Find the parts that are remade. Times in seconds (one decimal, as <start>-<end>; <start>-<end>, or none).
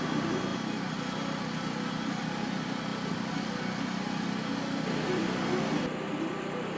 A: none